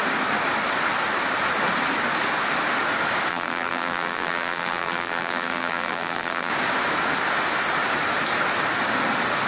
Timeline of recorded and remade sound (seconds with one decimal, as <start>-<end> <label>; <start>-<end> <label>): 0.0-3.3 recorded; 3.3-6.5 remade; 6.5-9.5 recorded